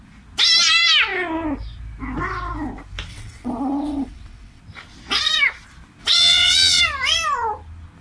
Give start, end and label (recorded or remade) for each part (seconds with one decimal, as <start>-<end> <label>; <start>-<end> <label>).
0.0-3.1 recorded; 3.1-4.6 remade; 4.6-6.0 recorded; 6.0-6.8 remade; 6.8-8.0 recorded